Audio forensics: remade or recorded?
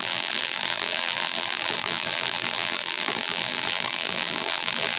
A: remade